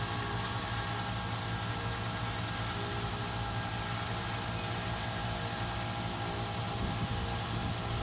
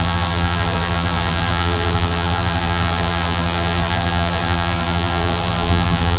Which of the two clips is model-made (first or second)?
second